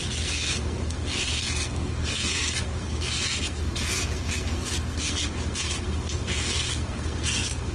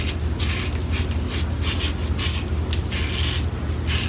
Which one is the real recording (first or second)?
second